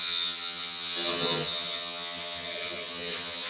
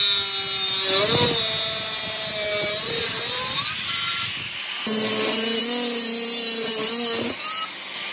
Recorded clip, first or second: second